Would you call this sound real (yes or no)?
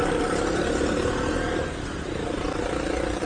yes